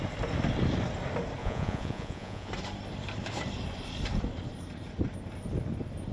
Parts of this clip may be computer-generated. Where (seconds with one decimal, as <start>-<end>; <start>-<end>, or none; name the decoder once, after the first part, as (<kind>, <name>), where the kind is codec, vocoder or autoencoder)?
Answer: 1.4-2.5 (vocoder, Vocos)

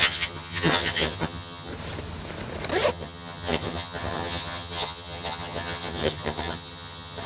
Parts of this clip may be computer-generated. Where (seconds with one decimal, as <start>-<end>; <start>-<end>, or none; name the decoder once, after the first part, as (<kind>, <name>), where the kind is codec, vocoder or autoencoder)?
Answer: 0.0-1.7 (vocoder, HiFi-GAN); 2.9-7.3

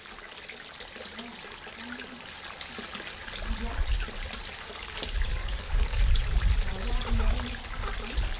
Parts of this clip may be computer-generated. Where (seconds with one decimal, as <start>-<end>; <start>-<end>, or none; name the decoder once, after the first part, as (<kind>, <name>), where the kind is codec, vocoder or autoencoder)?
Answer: 5.3-6.0 (codec, DAC)

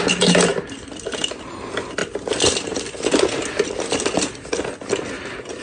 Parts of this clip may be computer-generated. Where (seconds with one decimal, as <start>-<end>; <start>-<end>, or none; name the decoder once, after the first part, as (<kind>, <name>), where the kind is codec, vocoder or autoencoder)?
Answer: none